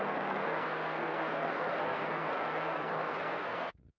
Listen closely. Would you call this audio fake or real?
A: fake